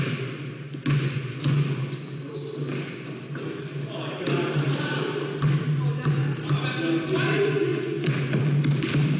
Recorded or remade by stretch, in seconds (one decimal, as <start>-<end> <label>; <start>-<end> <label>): 0.0-0.8 recorded; 0.8-2.3 remade; 2.3-7.7 recorded; 7.7-8.4 remade; 8.4-9.2 recorded